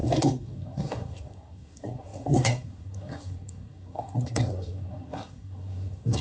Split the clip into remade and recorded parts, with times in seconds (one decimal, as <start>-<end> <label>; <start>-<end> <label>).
0.0-6.2 remade